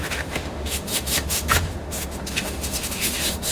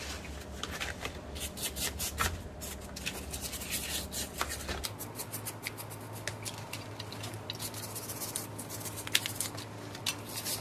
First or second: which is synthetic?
first